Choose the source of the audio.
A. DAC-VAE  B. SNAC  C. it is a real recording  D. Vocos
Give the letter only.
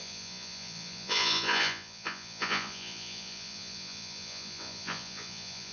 D